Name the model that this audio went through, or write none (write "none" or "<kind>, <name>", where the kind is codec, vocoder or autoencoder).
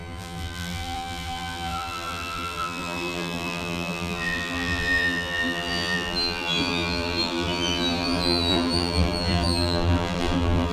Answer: vocoder, BigVGAN v2